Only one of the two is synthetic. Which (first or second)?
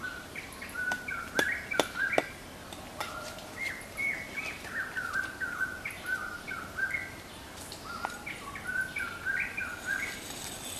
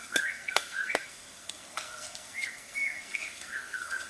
second